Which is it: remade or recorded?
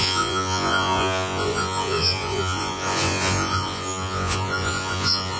remade